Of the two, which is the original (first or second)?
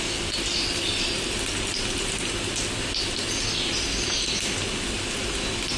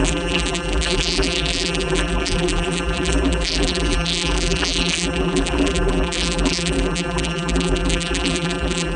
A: first